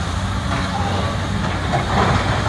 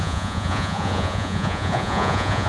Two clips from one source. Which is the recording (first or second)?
first